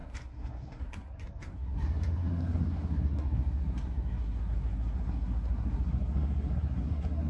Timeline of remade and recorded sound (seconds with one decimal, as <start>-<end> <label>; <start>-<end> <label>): 0.0-7.3 remade